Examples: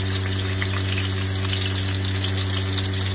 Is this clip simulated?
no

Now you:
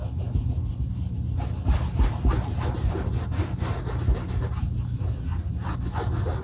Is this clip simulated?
no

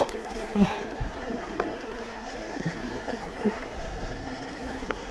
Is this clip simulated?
yes